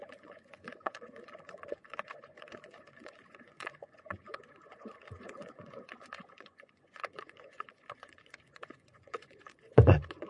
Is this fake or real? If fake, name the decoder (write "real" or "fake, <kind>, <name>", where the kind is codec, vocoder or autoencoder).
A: fake, vocoder, Vocos